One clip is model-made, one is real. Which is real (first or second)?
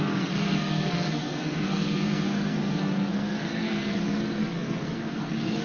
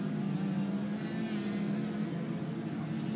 second